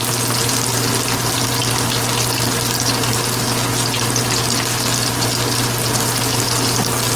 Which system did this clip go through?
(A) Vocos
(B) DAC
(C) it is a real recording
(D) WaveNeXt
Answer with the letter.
C